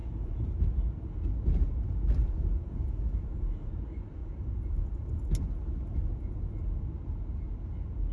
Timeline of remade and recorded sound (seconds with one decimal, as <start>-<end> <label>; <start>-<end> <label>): 0.0-0.6 remade; 0.6-2.2 recorded; 2.2-3.7 remade; 3.7-4.2 recorded; 4.2-5.3 remade; 5.3-8.1 recorded